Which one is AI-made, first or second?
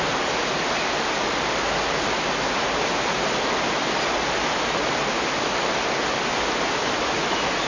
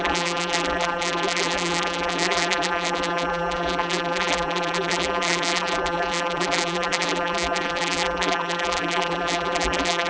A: second